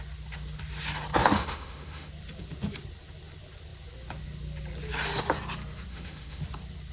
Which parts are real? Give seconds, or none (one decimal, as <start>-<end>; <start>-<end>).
0.0-1.2; 2.1-5.9; 6.4-6.9